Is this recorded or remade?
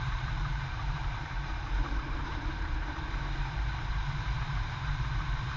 remade